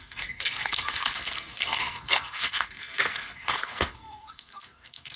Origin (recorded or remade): remade